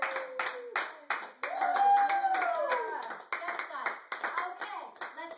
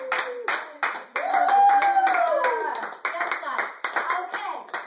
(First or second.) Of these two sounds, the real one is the first